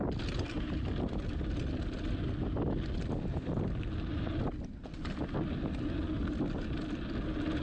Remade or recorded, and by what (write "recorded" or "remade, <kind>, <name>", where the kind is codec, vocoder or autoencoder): recorded